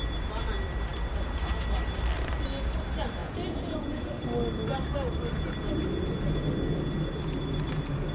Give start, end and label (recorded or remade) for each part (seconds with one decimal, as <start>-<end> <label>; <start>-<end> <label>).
0.0-3.2 recorded; 3.2-4.0 remade; 4.0-8.1 recorded